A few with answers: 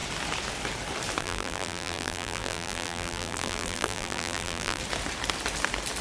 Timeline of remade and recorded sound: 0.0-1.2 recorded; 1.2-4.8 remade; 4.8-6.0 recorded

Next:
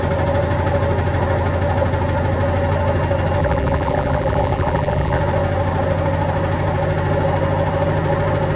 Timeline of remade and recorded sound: 0.0-3.4 recorded; 3.4-5.2 remade; 5.2-8.6 recorded